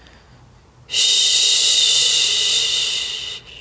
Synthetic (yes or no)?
no